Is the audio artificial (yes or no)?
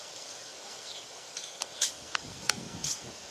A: yes